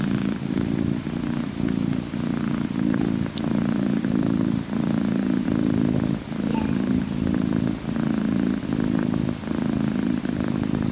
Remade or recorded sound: recorded